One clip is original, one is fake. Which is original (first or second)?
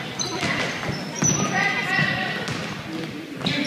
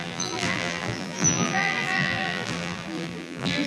first